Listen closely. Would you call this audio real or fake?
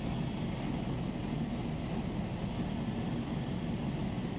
real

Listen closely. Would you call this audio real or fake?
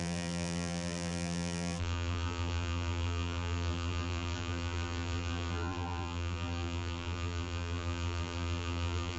fake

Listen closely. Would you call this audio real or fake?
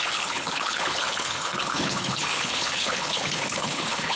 fake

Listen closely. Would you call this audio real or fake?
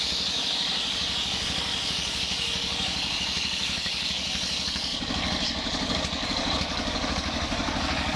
fake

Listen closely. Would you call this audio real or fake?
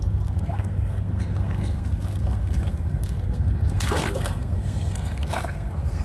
fake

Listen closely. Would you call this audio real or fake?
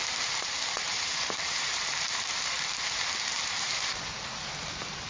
fake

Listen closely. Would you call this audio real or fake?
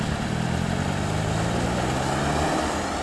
real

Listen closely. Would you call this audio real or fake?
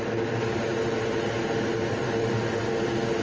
real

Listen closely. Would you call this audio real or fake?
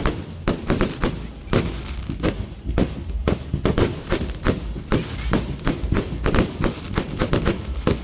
real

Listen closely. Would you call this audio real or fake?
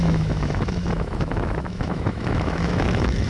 fake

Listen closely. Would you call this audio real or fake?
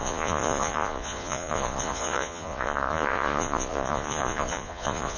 fake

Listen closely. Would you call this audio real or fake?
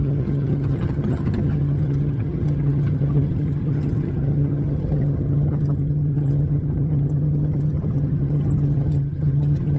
fake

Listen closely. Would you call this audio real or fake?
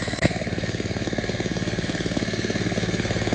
fake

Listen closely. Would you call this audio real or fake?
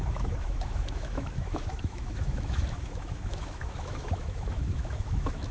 fake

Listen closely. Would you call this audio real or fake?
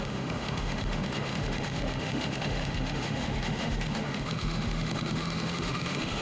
fake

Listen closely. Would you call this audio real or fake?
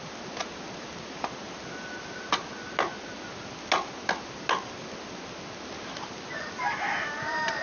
real